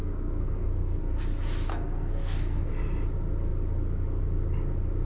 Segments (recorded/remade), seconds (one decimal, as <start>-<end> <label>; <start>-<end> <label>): 0.0-1.0 remade; 1.0-1.7 recorded; 1.7-2.7 remade; 2.7-5.0 recorded